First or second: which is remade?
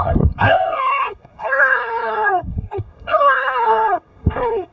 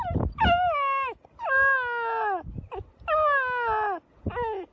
first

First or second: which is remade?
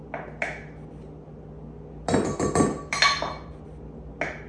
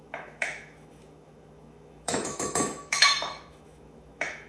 second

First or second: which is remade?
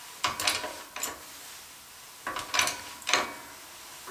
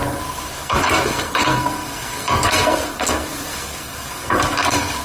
second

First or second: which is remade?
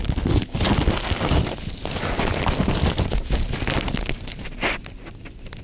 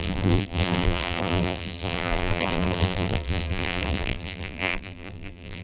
second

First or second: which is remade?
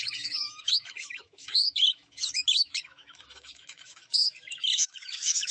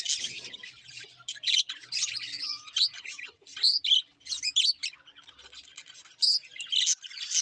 first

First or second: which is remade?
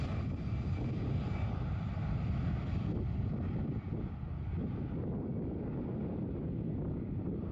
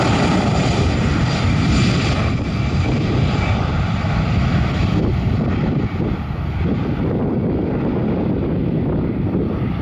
second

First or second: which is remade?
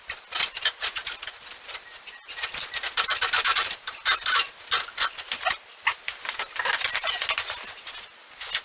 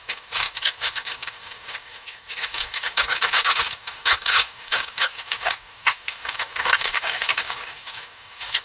second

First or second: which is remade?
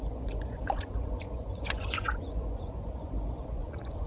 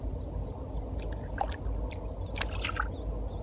first